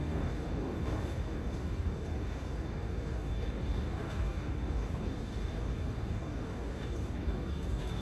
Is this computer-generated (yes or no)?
yes